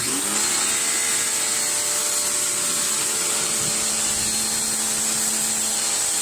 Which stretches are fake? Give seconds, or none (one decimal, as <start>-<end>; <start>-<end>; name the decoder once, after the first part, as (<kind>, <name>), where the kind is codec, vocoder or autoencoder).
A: none